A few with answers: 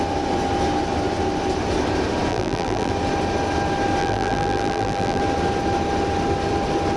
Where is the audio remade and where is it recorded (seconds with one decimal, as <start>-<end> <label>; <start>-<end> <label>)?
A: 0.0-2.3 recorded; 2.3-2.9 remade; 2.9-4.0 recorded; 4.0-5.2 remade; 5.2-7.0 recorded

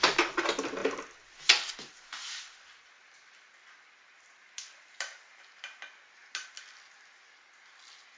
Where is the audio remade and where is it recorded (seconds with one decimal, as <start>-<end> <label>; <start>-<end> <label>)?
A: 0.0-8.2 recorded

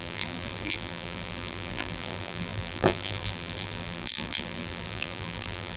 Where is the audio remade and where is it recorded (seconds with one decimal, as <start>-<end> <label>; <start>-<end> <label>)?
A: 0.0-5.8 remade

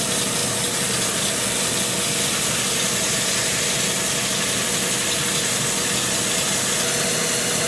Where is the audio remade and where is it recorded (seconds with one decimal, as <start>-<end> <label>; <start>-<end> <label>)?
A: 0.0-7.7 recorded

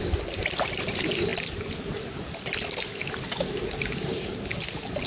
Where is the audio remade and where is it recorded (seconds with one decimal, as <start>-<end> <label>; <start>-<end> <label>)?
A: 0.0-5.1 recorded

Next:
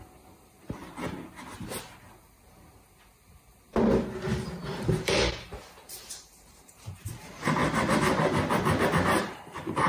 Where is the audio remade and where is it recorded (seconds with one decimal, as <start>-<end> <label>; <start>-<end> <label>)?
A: 0.0-0.8 remade; 0.8-4.7 recorded; 4.7-7.6 remade; 7.6-9.2 recorded; 9.2-9.9 remade